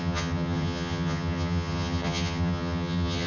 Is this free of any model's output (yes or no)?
no